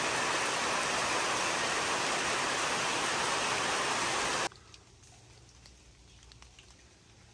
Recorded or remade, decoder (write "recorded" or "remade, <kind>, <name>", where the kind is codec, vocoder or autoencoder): recorded